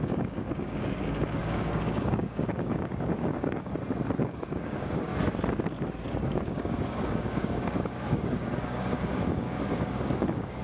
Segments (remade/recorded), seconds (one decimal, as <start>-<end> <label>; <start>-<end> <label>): 0.0-3.7 remade; 3.7-4.2 recorded; 4.2-5.1 remade; 5.1-6.1 recorded; 6.1-10.6 remade